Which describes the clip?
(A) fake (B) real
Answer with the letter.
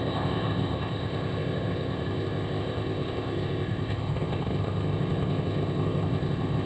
A